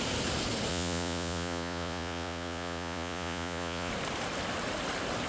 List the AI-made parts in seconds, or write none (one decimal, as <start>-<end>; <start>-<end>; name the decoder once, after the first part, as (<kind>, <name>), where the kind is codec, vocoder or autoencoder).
0.7-3.9 (vocoder, Vocos)